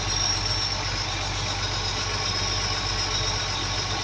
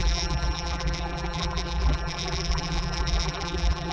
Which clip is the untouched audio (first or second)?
first